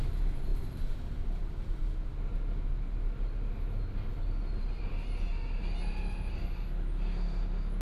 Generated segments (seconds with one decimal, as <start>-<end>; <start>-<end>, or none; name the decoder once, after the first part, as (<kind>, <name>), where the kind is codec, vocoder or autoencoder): none